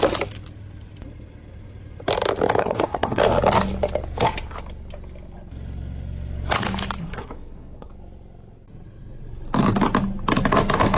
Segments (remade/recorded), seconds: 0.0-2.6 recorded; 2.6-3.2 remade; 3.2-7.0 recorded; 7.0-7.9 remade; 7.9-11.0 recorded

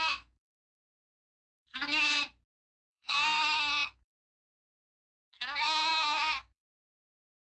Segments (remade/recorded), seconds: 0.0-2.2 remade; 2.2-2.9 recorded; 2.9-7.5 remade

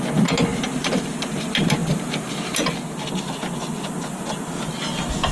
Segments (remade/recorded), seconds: 0.0-5.3 recorded

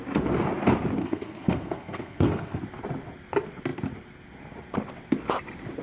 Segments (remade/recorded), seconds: 0.0-1.0 recorded; 1.0-2.6 remade; 2.6-5.8 recorded